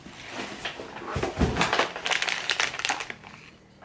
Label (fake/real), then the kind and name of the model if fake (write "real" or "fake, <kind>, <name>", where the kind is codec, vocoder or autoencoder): real